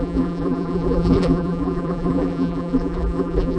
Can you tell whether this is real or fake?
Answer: fake